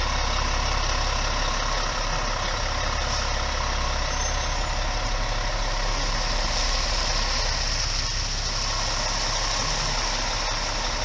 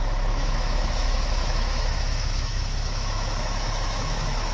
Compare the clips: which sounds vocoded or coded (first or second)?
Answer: second